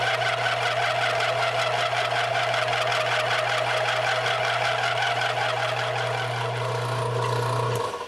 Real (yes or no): yes